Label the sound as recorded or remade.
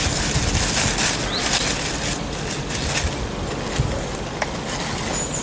recorded